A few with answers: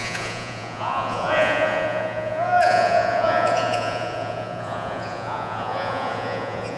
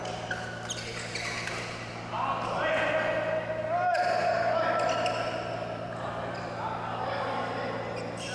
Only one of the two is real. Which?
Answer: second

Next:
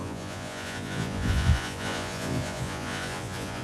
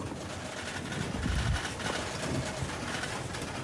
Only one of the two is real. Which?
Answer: second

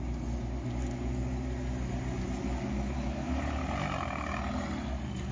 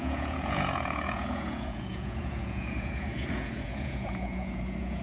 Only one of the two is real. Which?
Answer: first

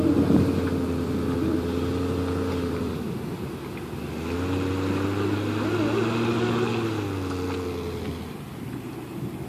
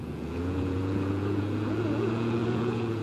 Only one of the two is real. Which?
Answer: first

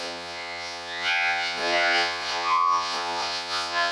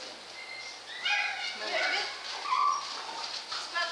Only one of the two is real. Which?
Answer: second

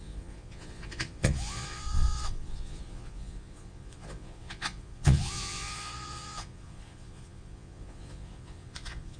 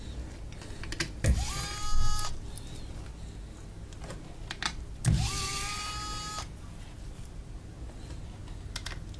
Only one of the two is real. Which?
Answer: second